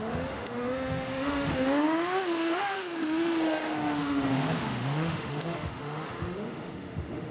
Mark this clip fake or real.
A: fake